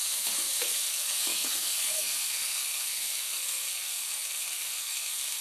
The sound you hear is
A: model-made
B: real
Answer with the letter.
A